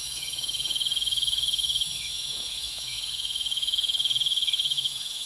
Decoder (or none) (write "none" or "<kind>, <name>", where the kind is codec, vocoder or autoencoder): autoencoder, DAC-VAE